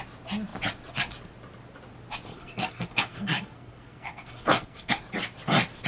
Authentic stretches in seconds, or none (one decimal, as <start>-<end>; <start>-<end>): 0.0-2.3; 5.0-5.9